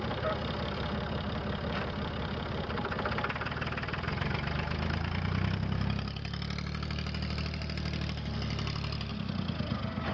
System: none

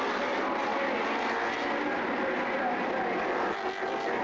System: none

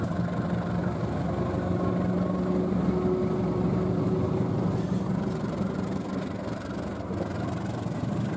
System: none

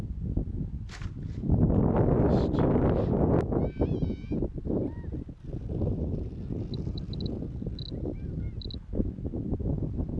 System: none